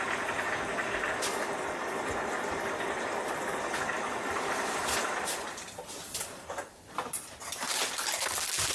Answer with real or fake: real